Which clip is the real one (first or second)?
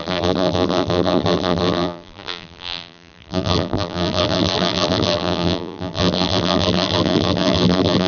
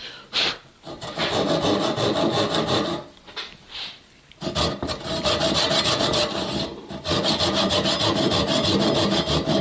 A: second